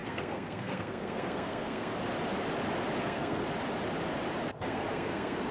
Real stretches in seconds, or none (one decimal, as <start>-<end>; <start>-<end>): 2.0-3.0; 3.4-4.5